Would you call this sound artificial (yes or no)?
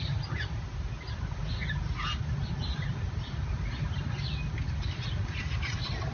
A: no